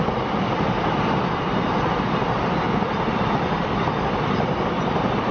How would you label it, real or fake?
real